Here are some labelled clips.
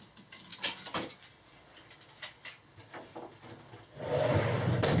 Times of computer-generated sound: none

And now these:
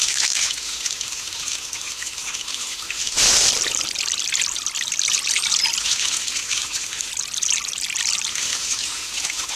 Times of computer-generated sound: 0.0-3.5 (autoencoder, DAC-VAE); 5.8-7.1; 8.3-9.6

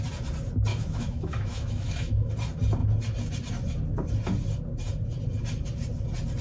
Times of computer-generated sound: 0.7-2.3 (autoencoder, DAC-VAE)

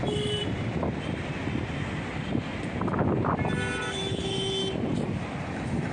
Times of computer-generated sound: 0.0-0.4 (autoencoder, DAC-VAE); 3.9-4.6; 5.4-5.9

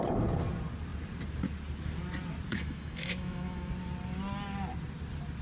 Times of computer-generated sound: 2.5-3.7 (autoencoder, DAC-VAE)

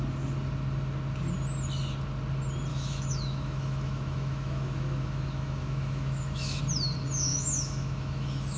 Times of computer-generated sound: 2.7-6.6 (autoencoder, DAC-VAE); 7.3-8.6

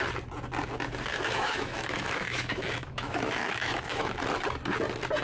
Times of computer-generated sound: 1.1-4.2 (autoencoder, DAC-VAE)